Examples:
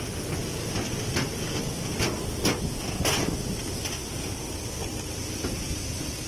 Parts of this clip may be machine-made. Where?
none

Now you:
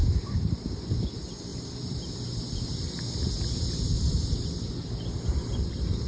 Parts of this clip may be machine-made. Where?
1.5-2.9 (vocoder, BigVGAN v2)

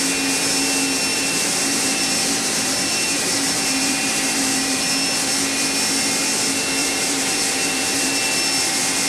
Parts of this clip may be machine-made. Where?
1.1-4.9 (vocoder, BigVGAN v2); 6.8-8.1

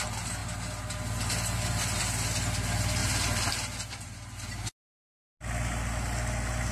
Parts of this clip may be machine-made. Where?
3.0-4.7 (vocoder, BigVGAN v2)

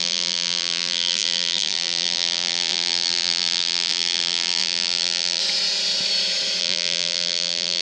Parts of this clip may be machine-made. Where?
0.0-5.4 (vocoder, BigVGAN v2); 6.6-7.8

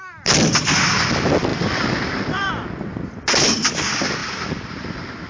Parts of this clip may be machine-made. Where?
1.5-2.5 (vocoder, BigVGAN v2); 2.9-3.8; 4.2-5.3

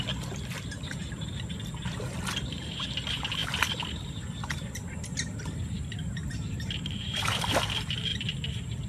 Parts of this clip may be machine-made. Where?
0.0-8.1 (vocoder, BigVGAN v2)